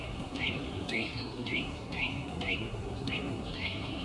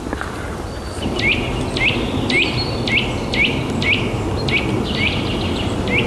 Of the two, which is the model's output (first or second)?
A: first